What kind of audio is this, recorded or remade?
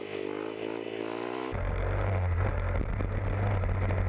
recorded